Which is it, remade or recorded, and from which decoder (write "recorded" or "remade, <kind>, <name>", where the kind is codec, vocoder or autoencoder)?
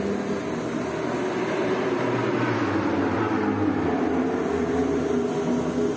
recorded